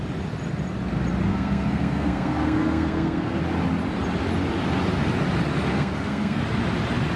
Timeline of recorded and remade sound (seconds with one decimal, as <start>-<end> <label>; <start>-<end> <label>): 0.0-1.3 recorded; 1.3-3.4 remade; 3.4-5.7 recorded; 5.7-6.4 remade; 6.4-7.2 recorded